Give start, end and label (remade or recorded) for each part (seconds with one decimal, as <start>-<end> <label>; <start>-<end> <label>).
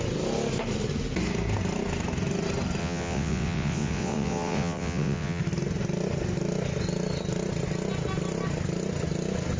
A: 0.0-2.8 recorded; 2.8-5.4 remade; 5.4-9.6 recorded